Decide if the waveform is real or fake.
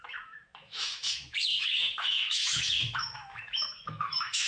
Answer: fake